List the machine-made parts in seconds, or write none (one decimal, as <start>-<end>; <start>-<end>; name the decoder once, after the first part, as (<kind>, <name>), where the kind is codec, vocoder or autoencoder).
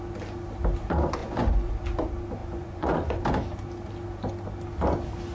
1.2-1.7 (vocoder, Vocos); 2.4-3.2